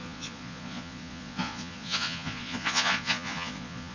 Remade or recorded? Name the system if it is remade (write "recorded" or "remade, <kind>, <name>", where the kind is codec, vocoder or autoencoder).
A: remade, vocoder, Vocos